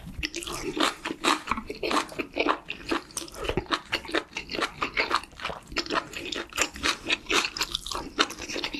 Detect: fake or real fake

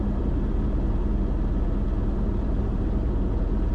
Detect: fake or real real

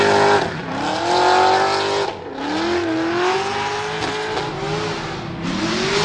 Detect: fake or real real